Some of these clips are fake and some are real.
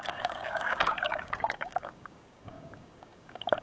fake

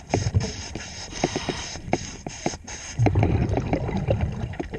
fake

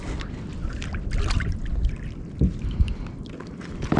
real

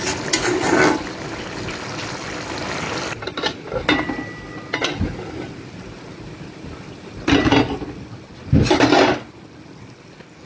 real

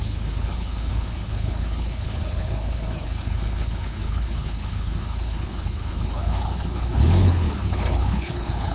fake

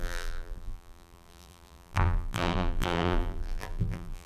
fake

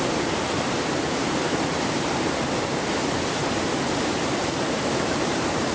real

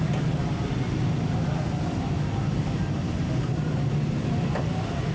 real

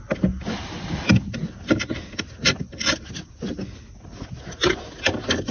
real